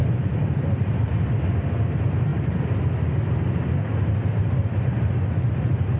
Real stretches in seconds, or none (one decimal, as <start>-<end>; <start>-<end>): 0.9-6.0